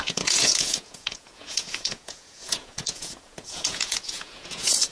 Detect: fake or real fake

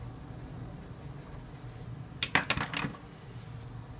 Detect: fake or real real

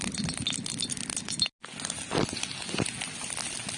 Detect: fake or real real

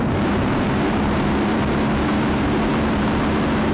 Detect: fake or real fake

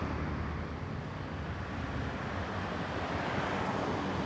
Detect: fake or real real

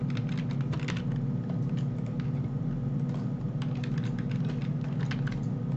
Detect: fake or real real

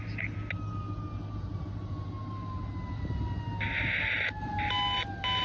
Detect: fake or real real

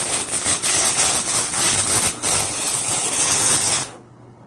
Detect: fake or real fake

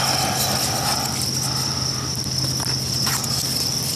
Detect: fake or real real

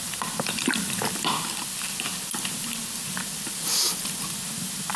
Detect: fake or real real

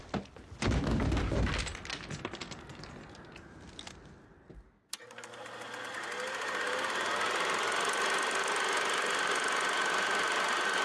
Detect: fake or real real